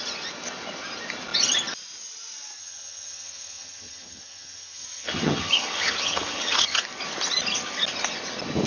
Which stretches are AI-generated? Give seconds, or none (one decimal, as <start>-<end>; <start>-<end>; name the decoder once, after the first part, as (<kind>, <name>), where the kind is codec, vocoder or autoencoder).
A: 2.6-6.8 (vocoder, HiFi-GAN)